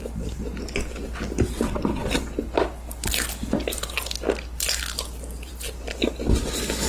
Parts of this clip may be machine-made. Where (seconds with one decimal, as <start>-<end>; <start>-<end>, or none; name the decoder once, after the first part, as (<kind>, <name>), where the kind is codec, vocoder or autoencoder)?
none